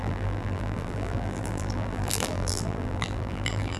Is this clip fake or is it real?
fake